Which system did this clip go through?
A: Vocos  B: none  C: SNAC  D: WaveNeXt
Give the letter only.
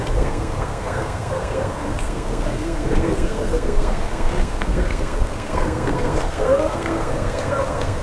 C